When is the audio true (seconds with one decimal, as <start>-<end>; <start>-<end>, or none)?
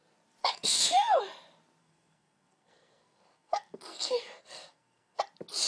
0.0-0.4; 1.2-1.8; 5.2-5.7